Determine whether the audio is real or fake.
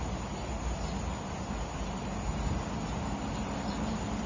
real